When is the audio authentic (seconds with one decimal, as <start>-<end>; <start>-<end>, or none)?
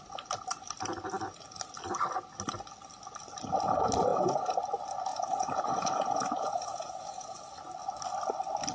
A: 0.0-4.1; 4.6-5.1; 7.4-8.7